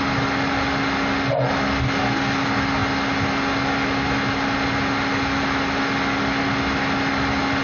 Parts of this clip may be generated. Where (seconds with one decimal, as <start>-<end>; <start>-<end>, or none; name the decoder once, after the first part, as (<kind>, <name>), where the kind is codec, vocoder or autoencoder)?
none